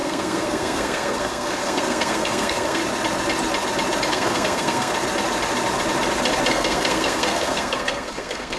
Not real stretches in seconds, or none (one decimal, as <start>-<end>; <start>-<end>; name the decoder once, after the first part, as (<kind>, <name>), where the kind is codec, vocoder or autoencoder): 0.0-2.8 (codec, SNAC); 4.1-4.9; 6.5-8.6